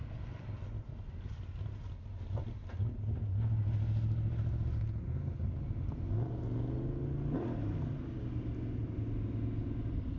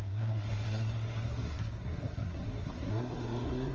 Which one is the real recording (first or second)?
first